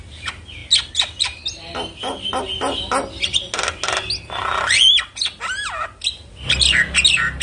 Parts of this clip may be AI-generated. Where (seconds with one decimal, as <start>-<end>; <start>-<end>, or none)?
none